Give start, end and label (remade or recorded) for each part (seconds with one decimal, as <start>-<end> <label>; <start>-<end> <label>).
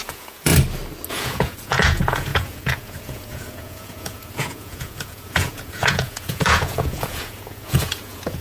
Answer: 0.0-0.5 remade; 0.5-1.1 recorded; 1.1-8.4 remade